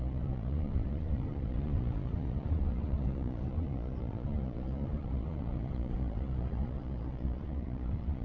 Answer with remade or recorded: remade